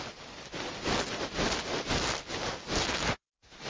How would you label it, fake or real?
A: real